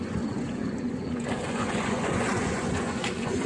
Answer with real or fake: fake